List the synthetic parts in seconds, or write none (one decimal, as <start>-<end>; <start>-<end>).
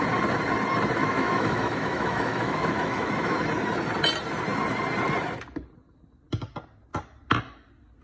1.0-3.4